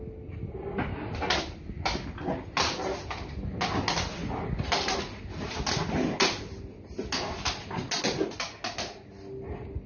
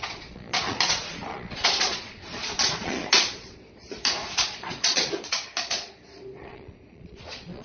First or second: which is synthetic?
second